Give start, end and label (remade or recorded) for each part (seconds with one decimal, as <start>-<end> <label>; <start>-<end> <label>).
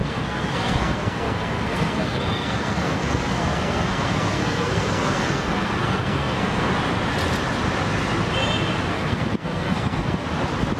0.0-6.7 remade; 6.7-8.9 recorded; 8.9-10.2 remade; 10.2-10.8 recorded